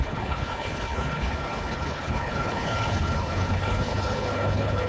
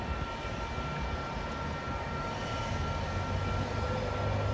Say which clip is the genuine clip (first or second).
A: second